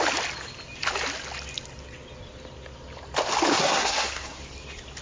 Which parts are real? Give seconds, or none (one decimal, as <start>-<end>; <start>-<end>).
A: 0.0-3.5; 4.4-5.0